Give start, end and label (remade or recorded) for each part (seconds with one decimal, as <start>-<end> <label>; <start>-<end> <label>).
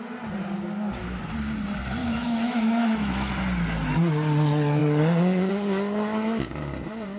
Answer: 0.0-2.0 recorded; 2.0-3.3 remade; 3.3-7.2 recorded